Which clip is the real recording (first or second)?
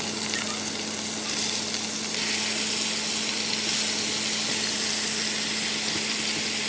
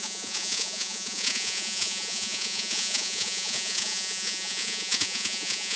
first